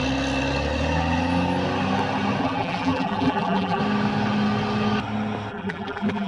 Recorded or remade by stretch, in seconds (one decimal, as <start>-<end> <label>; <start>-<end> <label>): 0.0-2.4 recorded; 2.4-3.8 remade; 3.8-5.5 recorded; 5.5-6.3 remade